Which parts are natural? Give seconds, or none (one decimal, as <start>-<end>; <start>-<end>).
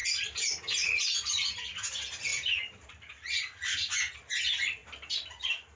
0.0-5.8